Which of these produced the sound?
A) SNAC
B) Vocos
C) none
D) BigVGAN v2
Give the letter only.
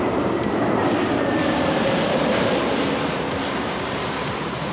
D